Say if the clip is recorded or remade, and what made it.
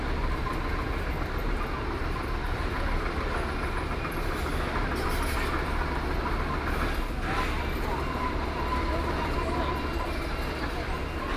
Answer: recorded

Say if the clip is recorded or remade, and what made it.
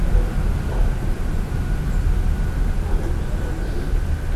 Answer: recorded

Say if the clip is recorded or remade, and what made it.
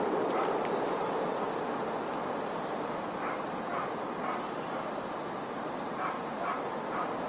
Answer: recorded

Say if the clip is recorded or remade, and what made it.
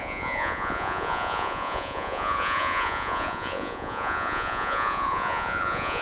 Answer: remade, vocoder, Vocos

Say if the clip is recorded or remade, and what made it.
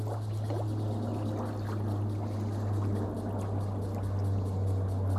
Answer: recorded